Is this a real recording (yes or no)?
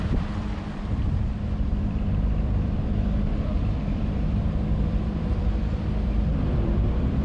no